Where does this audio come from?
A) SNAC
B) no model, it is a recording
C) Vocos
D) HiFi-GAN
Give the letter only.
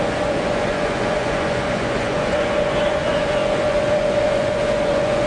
C